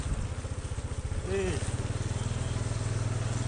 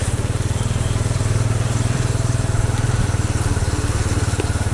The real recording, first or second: first